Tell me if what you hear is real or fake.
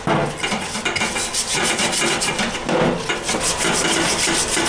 real